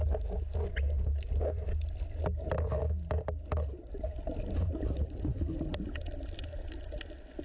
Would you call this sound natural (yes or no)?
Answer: yes